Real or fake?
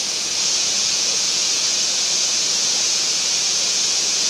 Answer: fake